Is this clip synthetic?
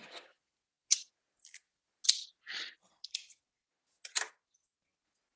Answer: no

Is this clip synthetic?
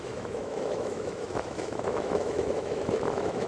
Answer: yes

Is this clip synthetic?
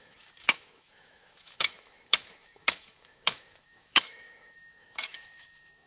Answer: yes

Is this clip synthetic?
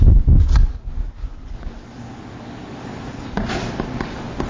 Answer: no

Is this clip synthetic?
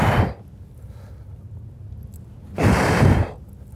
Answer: no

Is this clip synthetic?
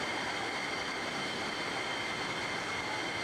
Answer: no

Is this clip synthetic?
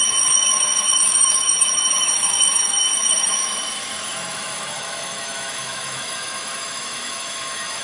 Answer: yes